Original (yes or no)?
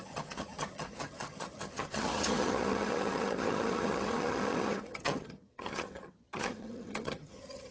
no